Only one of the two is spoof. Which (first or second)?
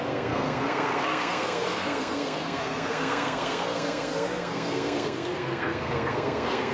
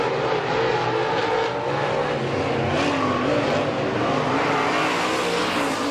first